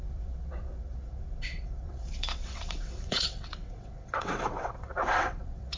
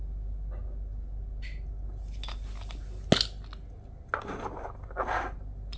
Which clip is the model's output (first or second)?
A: first